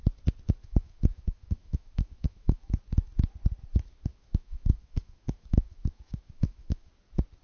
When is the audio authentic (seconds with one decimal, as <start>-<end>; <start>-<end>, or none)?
0.0-0.6; 2.7-4.1; 6.9-7.4